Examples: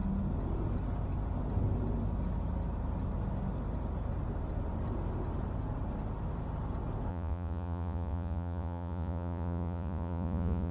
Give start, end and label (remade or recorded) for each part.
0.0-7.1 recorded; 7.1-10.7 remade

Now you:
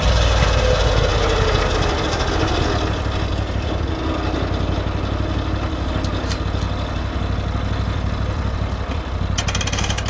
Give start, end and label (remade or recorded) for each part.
0.0-10.1 recorded

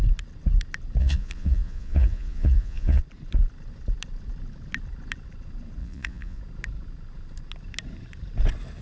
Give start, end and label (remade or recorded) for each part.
0.0-1.0 recorded; 1.0-3.0 remade; 3.0-5.8 recorded; 5.8-6.4 remade; 6.4-8.8 recorded